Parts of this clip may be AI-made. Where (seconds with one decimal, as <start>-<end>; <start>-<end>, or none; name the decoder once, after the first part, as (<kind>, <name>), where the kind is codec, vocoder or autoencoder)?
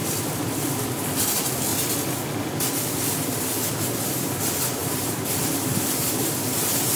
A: 0.0-1.2 (vocoder, BigVGAN v2); 4.8-6.6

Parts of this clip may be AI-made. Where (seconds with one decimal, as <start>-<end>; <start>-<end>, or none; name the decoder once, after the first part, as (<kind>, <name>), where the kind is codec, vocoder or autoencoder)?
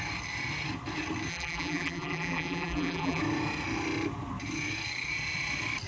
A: 1.3-3.2 (vocoder, BigVGAN v2)